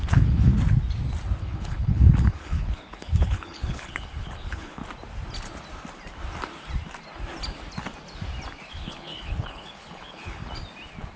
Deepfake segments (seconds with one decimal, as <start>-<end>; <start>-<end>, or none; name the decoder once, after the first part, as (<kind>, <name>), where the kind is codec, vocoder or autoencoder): 0.0-0.5 (codec, HILCodec); 1.4-4.8; 8.7-10.4